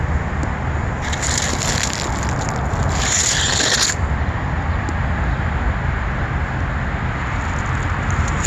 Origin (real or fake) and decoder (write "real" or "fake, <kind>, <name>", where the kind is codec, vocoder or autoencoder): real